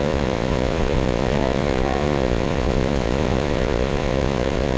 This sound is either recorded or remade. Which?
remade